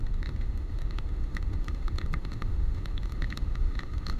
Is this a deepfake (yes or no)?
yes